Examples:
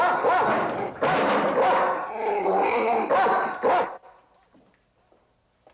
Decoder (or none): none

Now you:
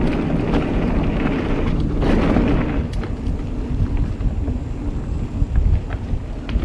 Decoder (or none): none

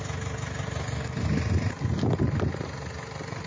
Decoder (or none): none